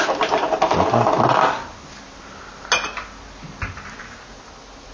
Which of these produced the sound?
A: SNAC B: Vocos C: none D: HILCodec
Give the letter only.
C